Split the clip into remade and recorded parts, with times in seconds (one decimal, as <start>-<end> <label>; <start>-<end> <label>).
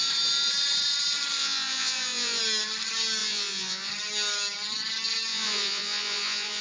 0.0-1.4 recorded; 1.4-2.4 remade; 2.4-3.2 recorded; 3.2-3.9 remade; 3.9-5.3 recorded; 5.3-6.6 remade